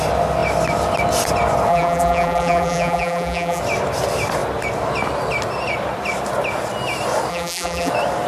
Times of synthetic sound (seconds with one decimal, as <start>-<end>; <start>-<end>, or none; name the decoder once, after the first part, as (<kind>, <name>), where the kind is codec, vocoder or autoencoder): 1.7-3.6 (vocoder, BigVGAN v2); 7.3-7.9